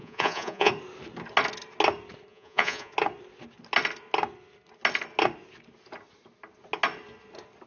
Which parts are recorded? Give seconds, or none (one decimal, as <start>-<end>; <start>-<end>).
0.7-2.3; 2.9-7.7